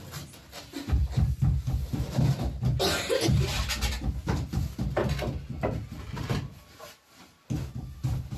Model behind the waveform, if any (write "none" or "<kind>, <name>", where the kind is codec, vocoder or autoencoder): none